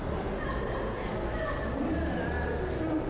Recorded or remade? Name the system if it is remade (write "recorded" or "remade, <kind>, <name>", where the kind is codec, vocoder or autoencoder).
recorded